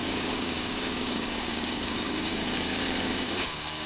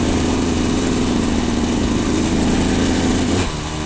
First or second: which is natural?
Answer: second